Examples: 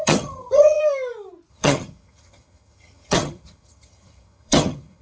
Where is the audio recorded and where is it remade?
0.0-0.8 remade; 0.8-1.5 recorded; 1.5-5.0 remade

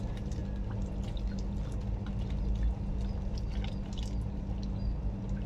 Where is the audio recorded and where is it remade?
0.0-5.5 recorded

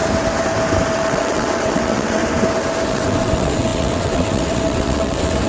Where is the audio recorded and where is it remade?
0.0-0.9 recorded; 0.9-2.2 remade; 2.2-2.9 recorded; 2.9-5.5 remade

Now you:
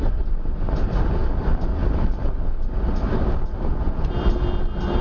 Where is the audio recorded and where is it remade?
0.0-5.0 recorded

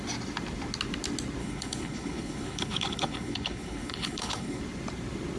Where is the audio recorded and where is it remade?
0.0-1.4 recorded; 1.4-4.6 remade; 4.6-5.4 recorded